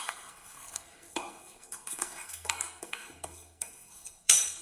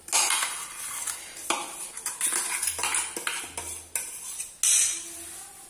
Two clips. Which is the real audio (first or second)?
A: second